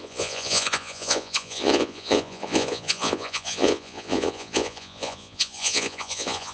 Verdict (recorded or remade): remade